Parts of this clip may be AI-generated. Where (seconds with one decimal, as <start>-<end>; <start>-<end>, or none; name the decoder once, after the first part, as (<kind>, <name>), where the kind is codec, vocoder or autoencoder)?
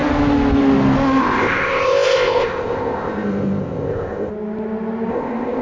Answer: 1.2-4.3 (codec, ZipCodec); 5.1-5.6